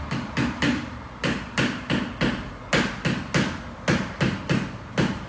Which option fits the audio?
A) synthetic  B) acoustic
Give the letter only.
B